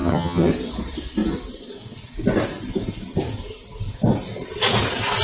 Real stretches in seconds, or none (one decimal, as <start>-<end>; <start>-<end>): 0.5-5.2